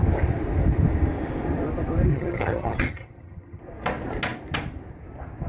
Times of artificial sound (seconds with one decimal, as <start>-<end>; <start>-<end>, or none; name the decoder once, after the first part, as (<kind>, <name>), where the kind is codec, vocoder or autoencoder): 2.1-3.6 (vocoder, HiFi-GAN)